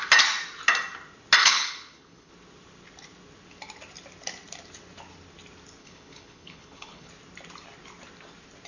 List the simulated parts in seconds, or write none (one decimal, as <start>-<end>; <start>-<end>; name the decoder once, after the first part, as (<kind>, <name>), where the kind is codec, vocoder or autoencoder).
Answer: 1.4-2.3 (codec, HILCodec); 5.8-7.1